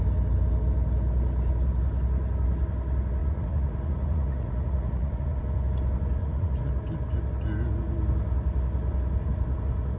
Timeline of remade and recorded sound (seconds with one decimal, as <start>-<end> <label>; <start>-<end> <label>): 0.0-3.2 recorded; 3.2-5.4 remade; 5.4-6.2 recorded; 6.2-6.7 remade; 6.7-10.0 recorded